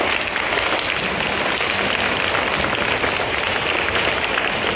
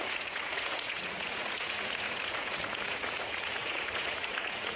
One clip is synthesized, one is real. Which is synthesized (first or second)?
second